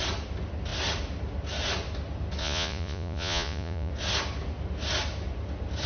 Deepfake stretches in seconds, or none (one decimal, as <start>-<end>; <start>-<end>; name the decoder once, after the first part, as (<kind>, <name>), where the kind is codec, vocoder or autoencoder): 2.4-3.9 (vocoder, Vocos)